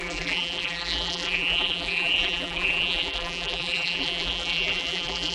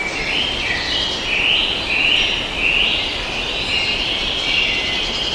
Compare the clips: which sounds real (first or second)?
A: second